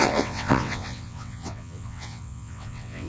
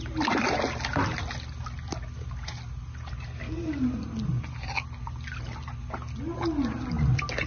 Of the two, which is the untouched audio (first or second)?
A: second